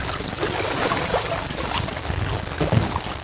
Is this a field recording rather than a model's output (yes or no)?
yes